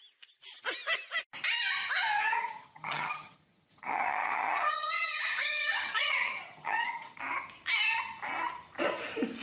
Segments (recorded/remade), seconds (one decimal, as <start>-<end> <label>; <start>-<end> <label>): 0.0-2.2 recorded; 2.2-7.2 remade; 7.2-9.4 recorded